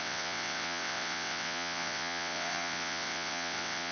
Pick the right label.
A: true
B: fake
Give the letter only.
B